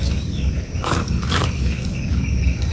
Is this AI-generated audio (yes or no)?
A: yes